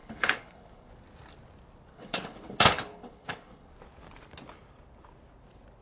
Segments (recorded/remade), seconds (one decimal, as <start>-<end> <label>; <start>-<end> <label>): 0.0-0.9 remade; 0.9-1.9 recorded; 1.9-3.7 remade; 3.7-5.8 recorded